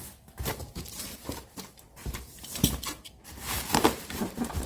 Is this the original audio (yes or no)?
no